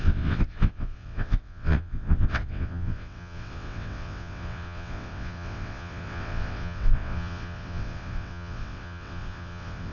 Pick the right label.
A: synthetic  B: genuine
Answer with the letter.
A